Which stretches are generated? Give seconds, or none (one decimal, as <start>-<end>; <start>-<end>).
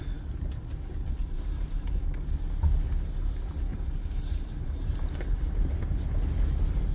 1.2-2.0; 3.7-5.0